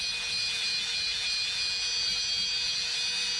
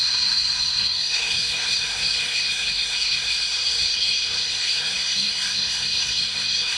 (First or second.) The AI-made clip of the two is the second